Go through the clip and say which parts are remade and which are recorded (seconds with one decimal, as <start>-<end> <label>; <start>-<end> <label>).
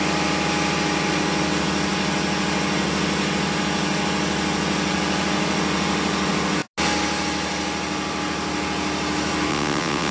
0.0-9.5 recorded; 9.5-10.1 remade